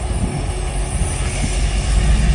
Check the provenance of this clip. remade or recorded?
recorded